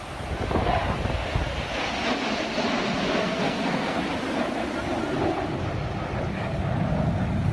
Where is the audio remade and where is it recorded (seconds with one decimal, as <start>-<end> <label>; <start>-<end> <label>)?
0.0-3.2 recorded; 3.2-4.0 remade; 4.0-7.5 recorded